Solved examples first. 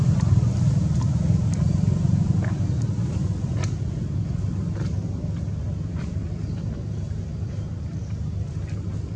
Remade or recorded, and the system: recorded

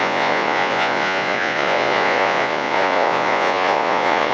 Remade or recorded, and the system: remade, vocoder, Vocos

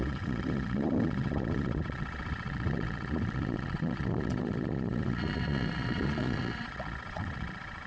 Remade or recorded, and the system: remade, vocoder, Vocos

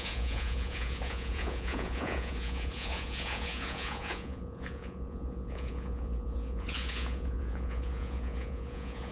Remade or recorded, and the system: remade, vocoder, Vocos